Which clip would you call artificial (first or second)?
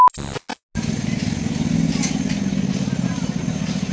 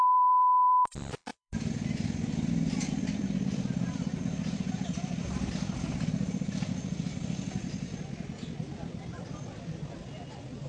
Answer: second